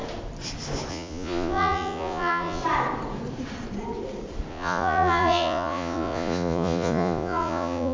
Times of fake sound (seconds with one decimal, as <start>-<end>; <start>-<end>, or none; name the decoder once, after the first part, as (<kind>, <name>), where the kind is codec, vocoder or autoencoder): 0.9-2.6 (vocoder, Vocos); 4.5-7.9